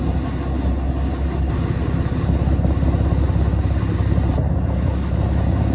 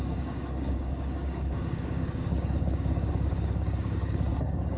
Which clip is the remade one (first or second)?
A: second